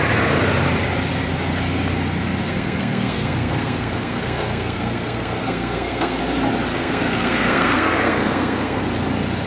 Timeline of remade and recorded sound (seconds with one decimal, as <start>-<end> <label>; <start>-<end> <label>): 0.0-2.5 recorded; 2.5-6.2 remade; 6.2-6.7 recorded; 6.7-8.8 remade; 8.8-9.5 recorded